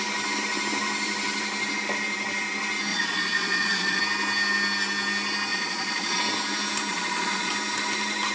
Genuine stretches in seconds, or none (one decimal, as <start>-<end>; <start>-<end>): 0.0-2.9; 4.0-5.5; 6.2-6.9; 7.5-8.3

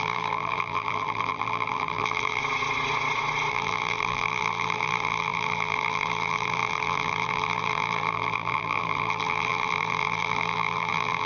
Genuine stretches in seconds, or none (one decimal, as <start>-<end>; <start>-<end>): 2.4-3.5

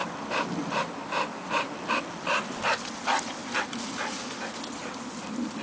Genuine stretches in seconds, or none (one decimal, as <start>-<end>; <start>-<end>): 0.0-5.6

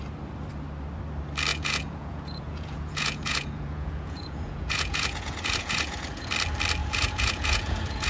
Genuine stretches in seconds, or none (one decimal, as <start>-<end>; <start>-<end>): 0.0-1.5; 6.3-6.8

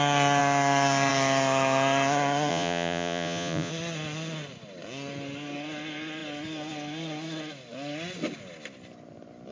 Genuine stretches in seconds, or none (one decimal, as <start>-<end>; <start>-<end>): 0.0-2.5; 3.7-9.5